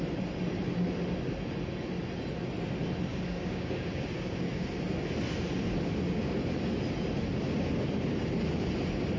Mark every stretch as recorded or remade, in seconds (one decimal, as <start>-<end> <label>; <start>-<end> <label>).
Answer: 0.0-3.1 recorded; 3.1-4.7 remade; 4.7-9.2 recorded